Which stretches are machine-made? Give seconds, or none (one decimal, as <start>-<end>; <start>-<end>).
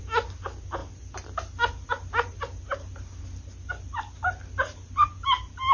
none